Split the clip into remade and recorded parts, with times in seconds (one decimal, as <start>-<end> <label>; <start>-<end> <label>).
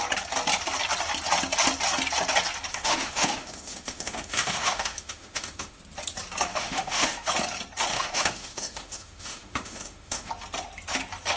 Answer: 0.0-2.7 recorded; 2.7-5.8 remade; 5.8-6.5 recorded; 6.5-7.3 remade; 7.3-7.9 recorded; 7.9-10.3 remade; 10.3-11.4 recorded